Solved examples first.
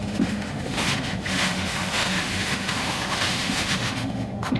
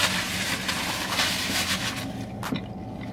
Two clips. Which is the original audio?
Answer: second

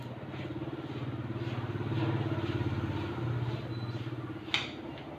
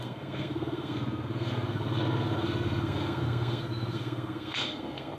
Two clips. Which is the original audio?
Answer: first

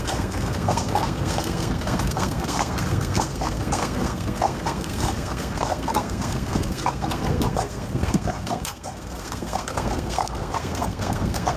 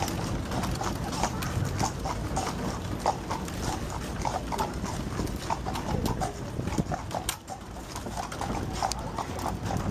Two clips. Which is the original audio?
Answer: second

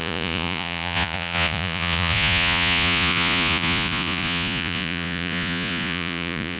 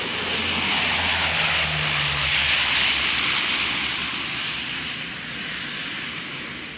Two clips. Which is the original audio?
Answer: second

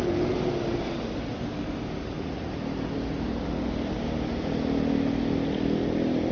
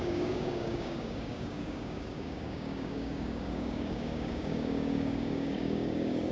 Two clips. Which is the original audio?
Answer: first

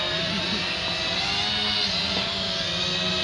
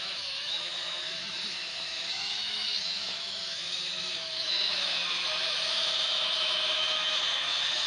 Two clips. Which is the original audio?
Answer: first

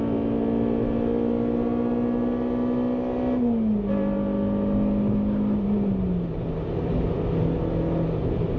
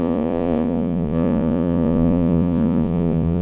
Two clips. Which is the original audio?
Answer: first